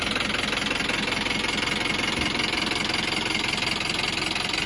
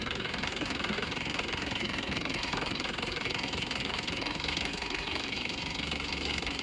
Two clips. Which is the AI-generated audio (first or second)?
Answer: second